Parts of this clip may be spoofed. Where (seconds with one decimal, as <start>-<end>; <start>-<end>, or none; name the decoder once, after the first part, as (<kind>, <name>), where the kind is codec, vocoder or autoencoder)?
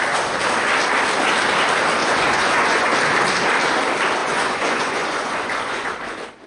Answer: 2.0-2.9 (vocoder, Vocos); 4.2-5.9